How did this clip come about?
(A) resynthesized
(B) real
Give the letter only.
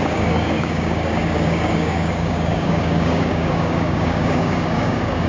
A